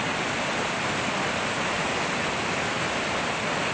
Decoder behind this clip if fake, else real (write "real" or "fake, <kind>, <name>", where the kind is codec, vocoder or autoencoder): fake, vocoder, BigVGAN v2